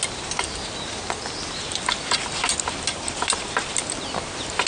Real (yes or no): yes